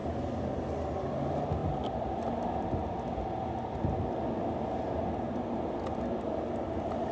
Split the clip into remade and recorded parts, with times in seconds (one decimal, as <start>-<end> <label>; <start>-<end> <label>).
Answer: 0.0-7.1 recorded